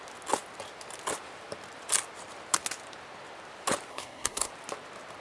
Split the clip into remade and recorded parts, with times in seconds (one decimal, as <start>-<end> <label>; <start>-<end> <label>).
0.0-3.9 recorded; 3.9-4.5 remade; 4.5-5.2 recorded